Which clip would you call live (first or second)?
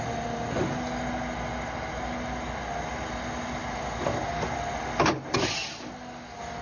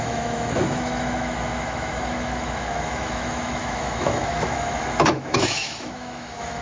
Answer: first